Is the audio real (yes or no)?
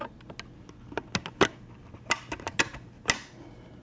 yes